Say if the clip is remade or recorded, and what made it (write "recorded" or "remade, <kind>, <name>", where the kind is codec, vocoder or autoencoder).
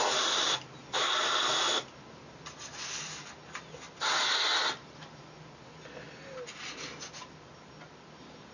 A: recorded